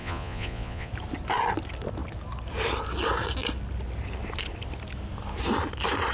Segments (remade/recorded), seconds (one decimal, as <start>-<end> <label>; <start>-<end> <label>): 0.0-0.9 remade; 0.9-6.1 recorded